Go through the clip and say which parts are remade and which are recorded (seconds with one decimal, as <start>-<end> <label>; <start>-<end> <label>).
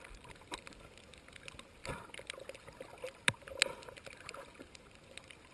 0.0-1.8 recorded; 1.8-3.4 remade; 3.4-5.5 recorded